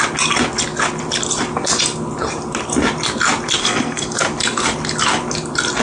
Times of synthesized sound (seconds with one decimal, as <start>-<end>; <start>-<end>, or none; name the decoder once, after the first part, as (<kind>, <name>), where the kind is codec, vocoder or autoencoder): 3.6-4.2 (codec, SNAC)